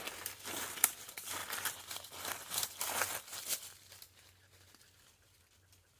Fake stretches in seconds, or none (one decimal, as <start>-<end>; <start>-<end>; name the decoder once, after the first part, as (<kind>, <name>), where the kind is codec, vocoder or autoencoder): none